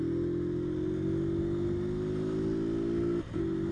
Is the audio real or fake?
real